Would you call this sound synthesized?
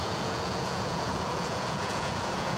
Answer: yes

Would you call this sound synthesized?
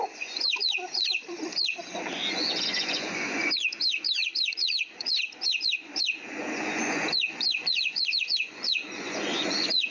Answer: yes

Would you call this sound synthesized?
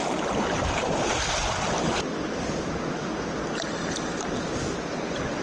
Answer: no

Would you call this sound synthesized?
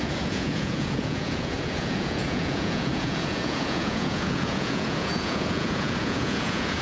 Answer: yes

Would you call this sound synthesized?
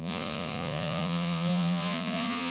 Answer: yes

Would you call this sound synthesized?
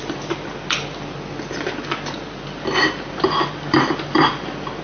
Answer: no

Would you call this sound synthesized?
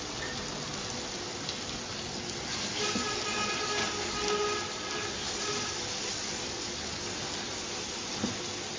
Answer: no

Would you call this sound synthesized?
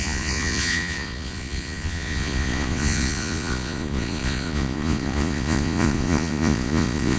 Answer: yes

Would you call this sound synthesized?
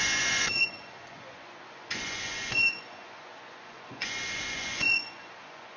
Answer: yes